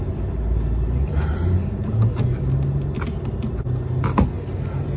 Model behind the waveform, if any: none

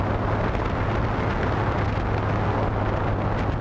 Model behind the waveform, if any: none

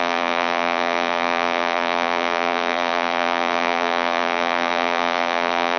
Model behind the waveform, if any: vocoder, BigVGAN v2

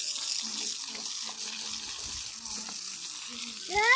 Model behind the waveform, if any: none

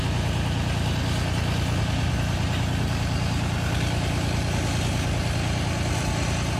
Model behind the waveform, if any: none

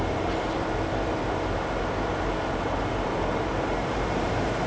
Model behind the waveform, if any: vocoder, BigVGAN v2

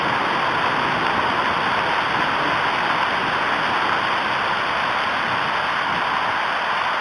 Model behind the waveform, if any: none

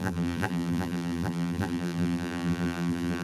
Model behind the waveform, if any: vocoder, BigVGAN v2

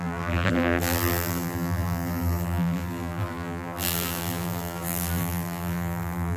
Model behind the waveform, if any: vocoder, BigVGAN v2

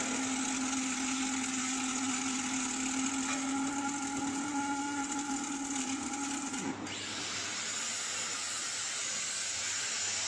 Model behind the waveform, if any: none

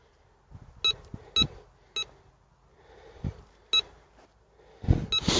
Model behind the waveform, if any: none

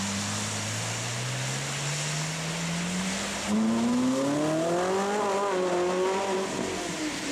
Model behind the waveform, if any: none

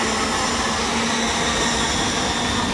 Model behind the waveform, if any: none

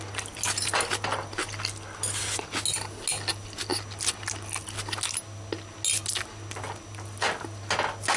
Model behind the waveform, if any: none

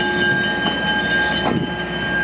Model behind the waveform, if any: none